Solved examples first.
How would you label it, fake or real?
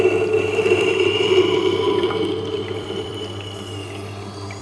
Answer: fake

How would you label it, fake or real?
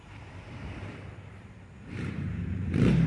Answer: fake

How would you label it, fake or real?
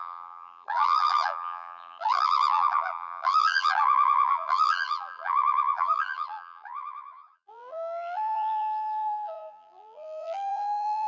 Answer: fake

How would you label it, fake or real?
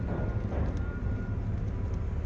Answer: real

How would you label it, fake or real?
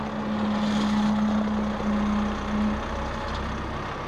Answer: real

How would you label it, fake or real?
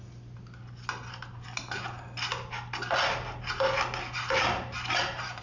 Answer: real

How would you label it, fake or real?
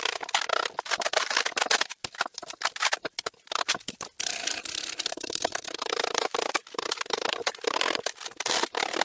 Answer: real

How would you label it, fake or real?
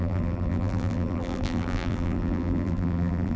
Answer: fake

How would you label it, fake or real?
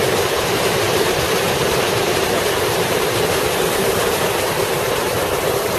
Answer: fake